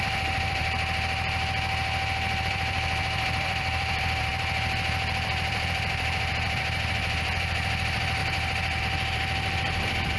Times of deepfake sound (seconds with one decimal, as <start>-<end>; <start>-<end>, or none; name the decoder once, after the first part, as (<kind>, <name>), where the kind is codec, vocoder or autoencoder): 0.0-0.6 (vocoder, BigVGAN v2); 2.4-8.2; 8.8-10.2